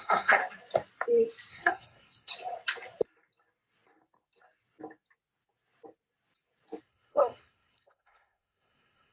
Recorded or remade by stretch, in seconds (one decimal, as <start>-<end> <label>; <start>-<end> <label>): 0.0-0.4 remade; 0.4-1.5 recorded; 1.5-2.3 remade; 2.3-6.8 recorded; 6.8-9.1 remade